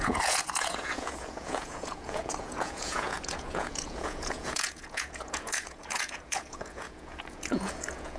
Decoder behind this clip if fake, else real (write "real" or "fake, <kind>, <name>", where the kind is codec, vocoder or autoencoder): fake, vocoder, Vocos